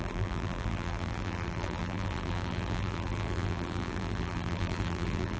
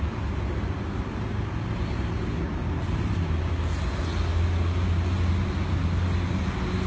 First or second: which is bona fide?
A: second